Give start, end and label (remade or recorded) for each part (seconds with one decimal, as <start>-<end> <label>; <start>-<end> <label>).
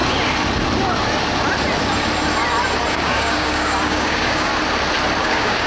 0.0-2.9 recorded; 2.9-4.5 remade; 4.5-5.2 recorded; 5.2-5.7 remade